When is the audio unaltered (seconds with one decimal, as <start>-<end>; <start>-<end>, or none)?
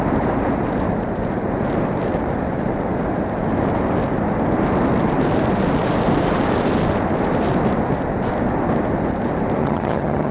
0.0-9.6